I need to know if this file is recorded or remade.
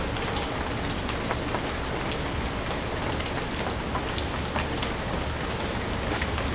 recorded